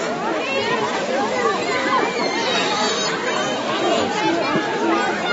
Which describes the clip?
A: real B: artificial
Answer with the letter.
A